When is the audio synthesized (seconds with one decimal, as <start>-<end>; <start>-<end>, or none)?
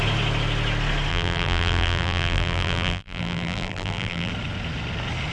1.1-4.3